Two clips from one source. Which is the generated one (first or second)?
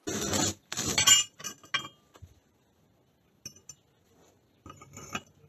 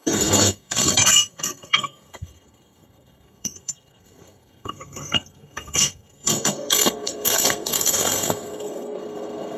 second